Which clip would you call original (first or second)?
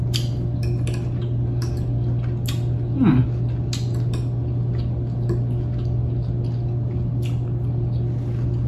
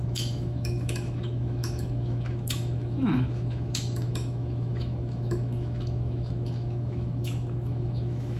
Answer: first